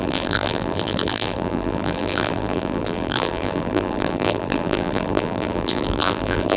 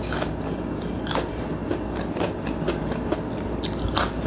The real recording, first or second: second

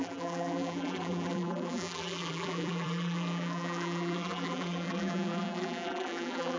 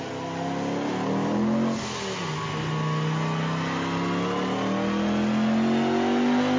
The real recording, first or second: second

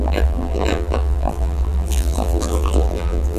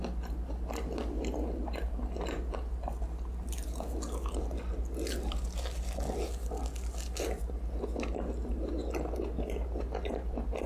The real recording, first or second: second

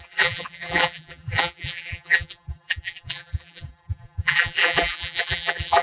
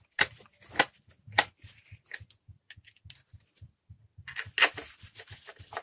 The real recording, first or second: second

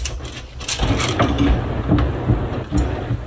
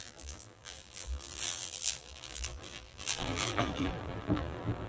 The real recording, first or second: first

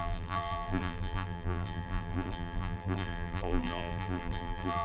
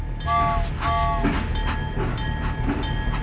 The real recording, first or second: second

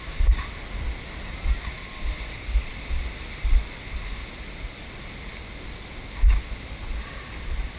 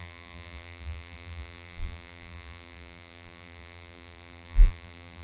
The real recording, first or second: first